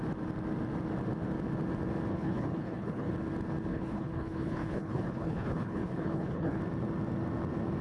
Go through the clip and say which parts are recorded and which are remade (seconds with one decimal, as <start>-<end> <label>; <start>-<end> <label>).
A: 0.0-2.1 recorded; 2.1-3.1 remade; 3.1-3.7 recorded; 3.7-6.6 remade; 6.6-7.8 recorded